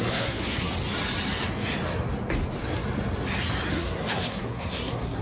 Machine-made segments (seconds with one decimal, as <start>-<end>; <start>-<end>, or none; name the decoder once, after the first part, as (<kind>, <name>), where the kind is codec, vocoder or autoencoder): 0.0-0.7 (codec, SNAC); 3.7-5.2